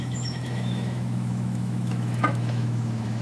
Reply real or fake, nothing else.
fake